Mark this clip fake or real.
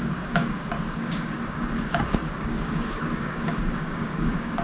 fake